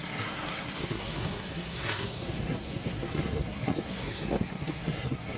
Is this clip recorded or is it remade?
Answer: remade